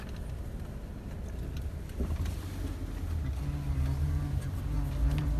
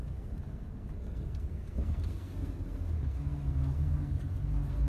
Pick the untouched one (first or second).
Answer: first